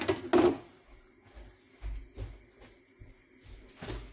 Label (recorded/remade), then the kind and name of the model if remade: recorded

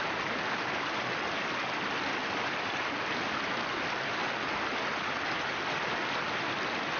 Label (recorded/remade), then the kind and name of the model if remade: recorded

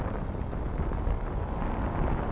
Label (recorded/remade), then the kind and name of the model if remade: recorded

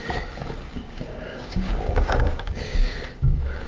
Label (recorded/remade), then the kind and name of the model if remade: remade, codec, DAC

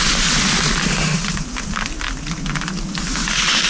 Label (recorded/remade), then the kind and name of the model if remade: recorded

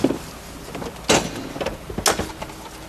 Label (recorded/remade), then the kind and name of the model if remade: recorded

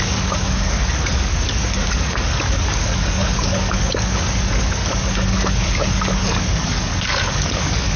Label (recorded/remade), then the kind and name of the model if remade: remade, codec, DAC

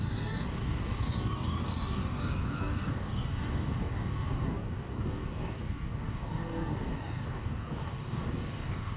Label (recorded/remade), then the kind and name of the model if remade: remade, codec, DAC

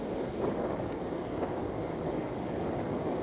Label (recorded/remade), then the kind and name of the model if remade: remade, codec, DAC